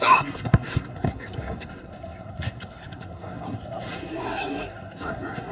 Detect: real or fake fake